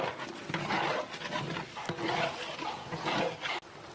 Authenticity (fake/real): real